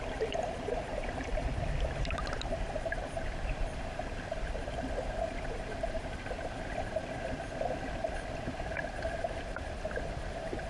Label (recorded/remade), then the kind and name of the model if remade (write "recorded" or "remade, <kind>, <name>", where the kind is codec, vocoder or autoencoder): remade, vocoder, BigVGAN v2